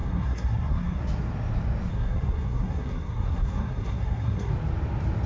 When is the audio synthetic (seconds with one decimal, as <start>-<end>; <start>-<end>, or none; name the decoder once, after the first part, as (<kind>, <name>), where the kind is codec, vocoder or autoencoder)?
0.0-1.0 (codec, SNAC); 1.9-4.5